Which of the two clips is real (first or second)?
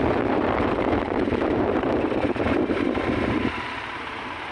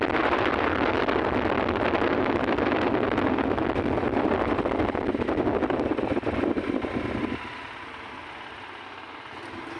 second